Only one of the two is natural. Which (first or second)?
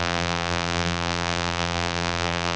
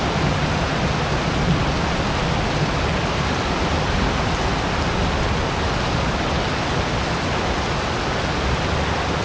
second